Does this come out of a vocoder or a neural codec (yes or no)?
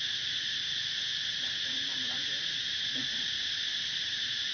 yes